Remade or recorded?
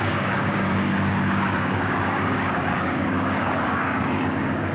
remade